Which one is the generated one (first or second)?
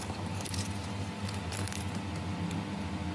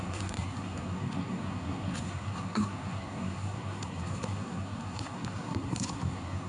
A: second